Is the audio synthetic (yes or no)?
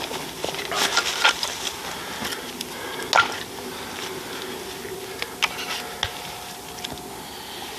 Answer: no